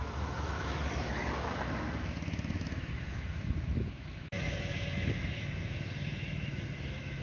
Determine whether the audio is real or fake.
fake